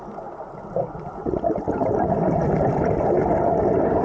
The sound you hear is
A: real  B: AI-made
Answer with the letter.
A